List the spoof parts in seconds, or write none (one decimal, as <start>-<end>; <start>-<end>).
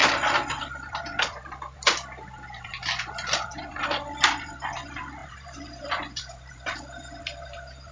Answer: 5.2-7.2